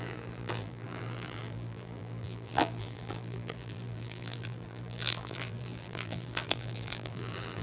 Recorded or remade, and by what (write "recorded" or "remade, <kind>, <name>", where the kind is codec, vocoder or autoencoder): remade, vocoder, BigVGAN v2